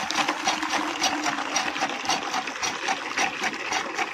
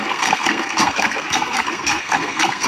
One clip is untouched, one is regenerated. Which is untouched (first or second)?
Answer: first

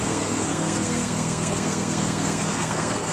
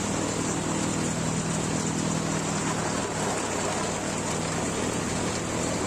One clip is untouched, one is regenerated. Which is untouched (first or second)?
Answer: second